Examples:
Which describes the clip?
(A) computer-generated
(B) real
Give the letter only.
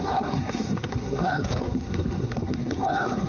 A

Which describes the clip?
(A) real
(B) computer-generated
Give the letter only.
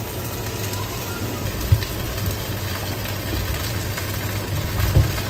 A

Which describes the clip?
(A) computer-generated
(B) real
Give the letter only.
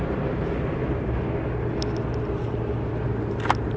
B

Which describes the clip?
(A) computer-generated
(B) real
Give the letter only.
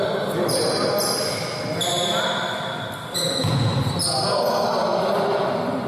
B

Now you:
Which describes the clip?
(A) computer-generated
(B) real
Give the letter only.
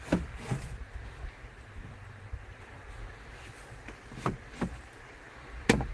B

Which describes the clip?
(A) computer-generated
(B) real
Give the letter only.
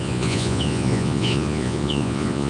A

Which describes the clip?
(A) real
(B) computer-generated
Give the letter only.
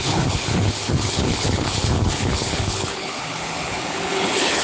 B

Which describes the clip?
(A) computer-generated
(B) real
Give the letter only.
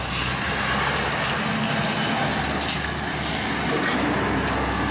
B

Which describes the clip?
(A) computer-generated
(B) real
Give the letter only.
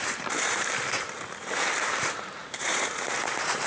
A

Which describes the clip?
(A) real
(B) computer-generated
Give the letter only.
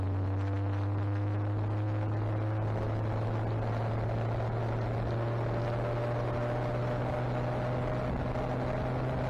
A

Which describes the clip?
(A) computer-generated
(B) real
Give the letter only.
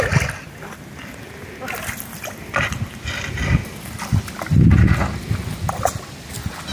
B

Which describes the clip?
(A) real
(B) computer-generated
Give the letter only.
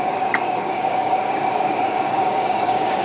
B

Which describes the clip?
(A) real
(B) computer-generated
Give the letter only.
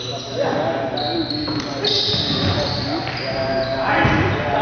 A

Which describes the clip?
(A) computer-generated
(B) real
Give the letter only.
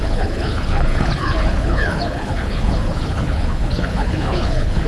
A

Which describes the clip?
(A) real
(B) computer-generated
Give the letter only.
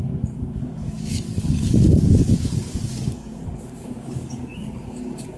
B